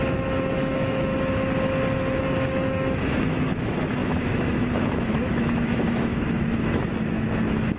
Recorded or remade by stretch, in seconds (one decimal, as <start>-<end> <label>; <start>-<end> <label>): 0.0-1.1 remade; 1.1-2.2 recorded; 2.2-7.8 remade